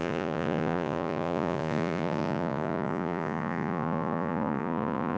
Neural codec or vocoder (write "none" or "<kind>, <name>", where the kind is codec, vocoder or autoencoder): vocoder, Vocos